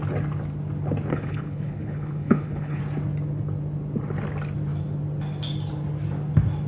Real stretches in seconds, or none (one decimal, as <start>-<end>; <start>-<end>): 0.0-1.1; 2.8-6.7